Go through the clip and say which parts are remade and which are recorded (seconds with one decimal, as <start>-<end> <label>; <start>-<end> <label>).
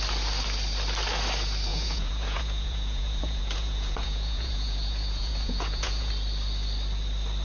0.0-1.7 recorded; 1.7-6.1 remade; 6.1-7.4 recorded